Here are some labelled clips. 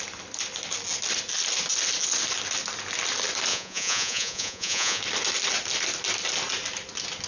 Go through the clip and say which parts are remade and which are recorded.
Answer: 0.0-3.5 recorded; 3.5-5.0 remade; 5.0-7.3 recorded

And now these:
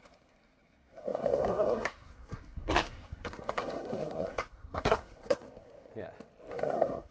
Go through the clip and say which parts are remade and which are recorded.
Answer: 0.0-5.9 remade; 5.9-6.5 recorded; 6.5-7.1 remade

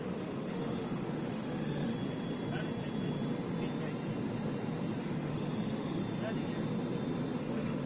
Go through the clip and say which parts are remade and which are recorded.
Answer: 0.0-1.9 remade; 1.9-5.0 recorded; 5.0-6.0 remade; 6.0-7.4 recorded; 7.4-7.9 remade

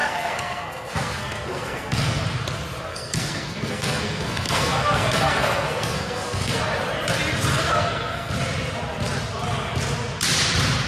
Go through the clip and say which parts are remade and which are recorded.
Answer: 0.0-2.2 remade; 2.2-2.9 recorded; 2.9-6.6 remade; 6.6-7.5 recorded; 7.5-8.3 remade; 8.3-10.9 recorded

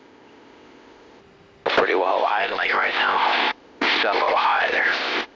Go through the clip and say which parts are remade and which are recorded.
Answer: 0.0-1.2 remade; 1.2-2.4 recorded; 2.4-5.4 remade

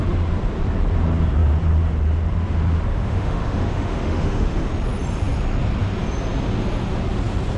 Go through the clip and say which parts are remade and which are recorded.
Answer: 0.0-2.9 recorded; 2.9-4.7 remade; 4.7-7.6 recorded

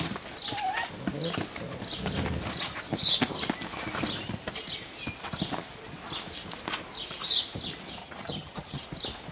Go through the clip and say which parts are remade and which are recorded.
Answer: 0.0-8.0 recorded; 8.0-8.8 remade; 8.8-9.3 recorded

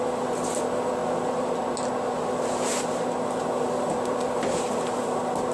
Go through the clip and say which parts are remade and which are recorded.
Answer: 0.0-5.5 recorded